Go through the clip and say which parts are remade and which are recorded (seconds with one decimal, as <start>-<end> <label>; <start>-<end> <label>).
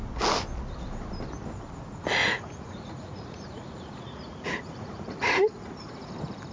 0.0-2.2 recorded; 2.2-6.1 remade; 6.1-6.5 recorded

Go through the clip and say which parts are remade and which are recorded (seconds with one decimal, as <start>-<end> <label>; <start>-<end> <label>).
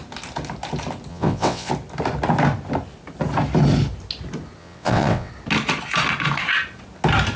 0.0-1.1 recorded; 1.1-1.7 remade; 1.7-4.6 recorded; 4.6-5.3 remade; 5.3-7.4 recorded